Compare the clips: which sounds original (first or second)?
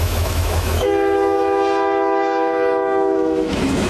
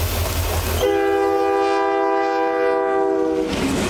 second